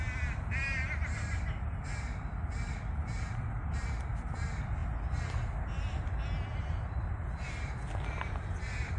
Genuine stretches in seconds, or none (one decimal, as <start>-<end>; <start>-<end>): 0.0-9.0